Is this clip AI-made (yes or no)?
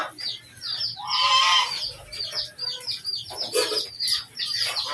no